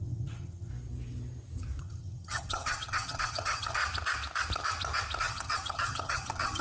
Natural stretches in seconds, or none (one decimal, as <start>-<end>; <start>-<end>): 0.7-1.8; 3.8-5.2